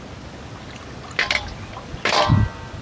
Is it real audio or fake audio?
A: real